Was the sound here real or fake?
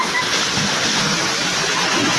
real